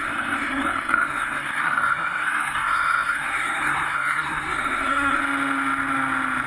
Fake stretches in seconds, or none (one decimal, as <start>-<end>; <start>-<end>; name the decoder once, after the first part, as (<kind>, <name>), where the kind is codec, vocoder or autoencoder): 0.0-5.2 (codec, SNAC)